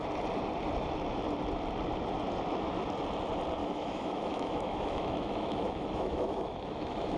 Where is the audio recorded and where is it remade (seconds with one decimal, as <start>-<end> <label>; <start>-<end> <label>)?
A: 0.0-3.6 recorded; 3.6-7.2 remade